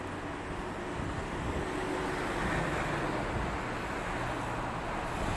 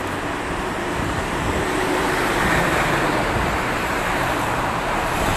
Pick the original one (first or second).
first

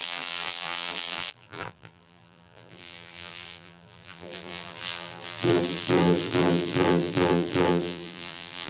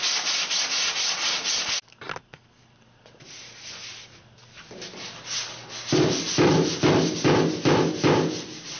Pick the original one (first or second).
second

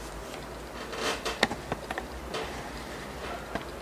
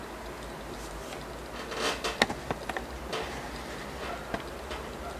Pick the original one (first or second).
second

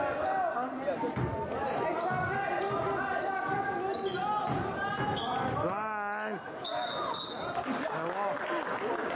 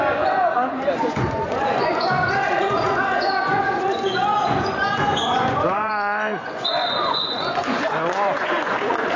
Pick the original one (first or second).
first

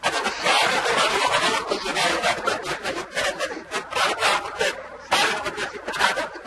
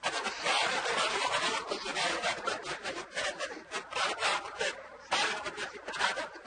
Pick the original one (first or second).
first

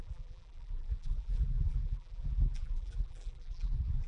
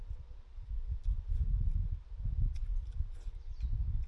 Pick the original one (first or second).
second